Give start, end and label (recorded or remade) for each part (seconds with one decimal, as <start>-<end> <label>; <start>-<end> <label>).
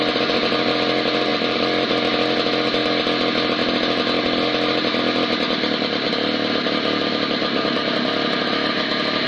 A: 0.0-1.3 recorded; 1.3-1.9 remade; 1.9-9.3 recorded